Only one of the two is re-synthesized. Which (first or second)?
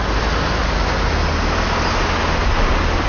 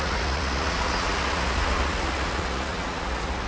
second